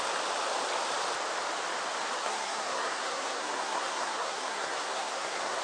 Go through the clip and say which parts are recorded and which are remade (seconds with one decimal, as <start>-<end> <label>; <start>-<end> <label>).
0.0-2.2 recorded; 2.2-5.6 remade